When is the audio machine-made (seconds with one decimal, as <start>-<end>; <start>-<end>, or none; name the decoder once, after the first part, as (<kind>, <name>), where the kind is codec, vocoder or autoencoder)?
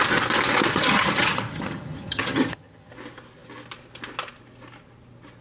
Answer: 0.7-2.9 (vocoder, HiFi-GAN)